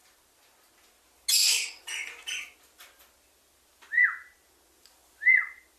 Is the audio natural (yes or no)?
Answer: yes